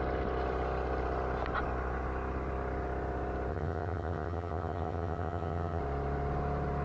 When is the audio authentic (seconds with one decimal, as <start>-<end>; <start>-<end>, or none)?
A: 0.0-3.5; 5.8-6.8